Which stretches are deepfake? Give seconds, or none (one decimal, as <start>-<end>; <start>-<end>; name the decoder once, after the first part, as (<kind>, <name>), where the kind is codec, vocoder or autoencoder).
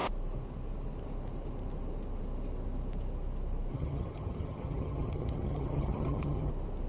3.7-6.5 (vocoder, HiFi-GAN)